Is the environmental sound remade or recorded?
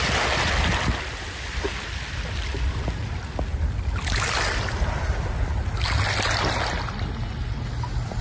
recorded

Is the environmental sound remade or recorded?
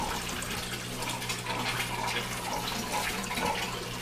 recorded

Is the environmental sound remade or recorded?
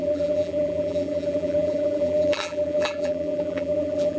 remade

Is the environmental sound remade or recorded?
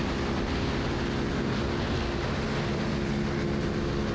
recorded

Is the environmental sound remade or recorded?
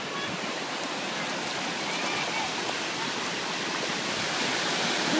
recorded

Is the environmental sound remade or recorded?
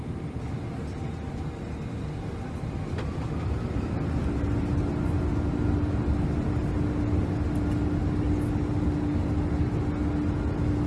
recorded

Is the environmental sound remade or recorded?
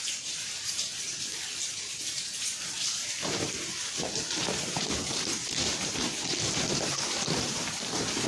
remade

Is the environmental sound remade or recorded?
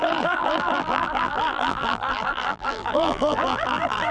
remade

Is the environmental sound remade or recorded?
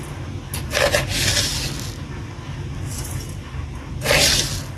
recorded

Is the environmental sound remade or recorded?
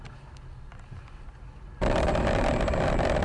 remade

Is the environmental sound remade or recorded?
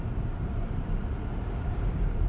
remade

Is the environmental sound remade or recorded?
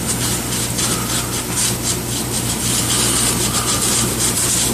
recorded